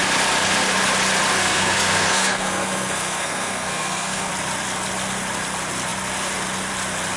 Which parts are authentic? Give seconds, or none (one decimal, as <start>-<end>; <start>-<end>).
0.0-1.4; 4.3-7.2